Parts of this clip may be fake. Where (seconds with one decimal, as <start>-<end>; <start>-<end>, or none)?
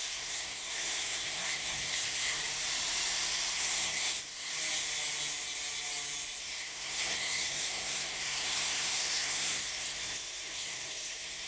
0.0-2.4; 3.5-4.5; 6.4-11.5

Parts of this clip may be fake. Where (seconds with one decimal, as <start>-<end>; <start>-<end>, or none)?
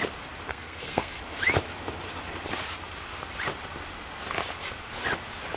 0.5-1.2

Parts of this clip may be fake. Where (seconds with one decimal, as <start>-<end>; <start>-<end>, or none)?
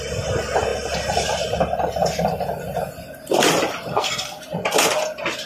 3.9-4.4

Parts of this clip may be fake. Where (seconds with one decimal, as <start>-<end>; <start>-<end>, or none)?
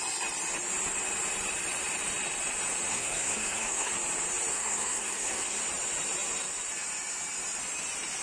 2.9-3.9; 4.5-5.6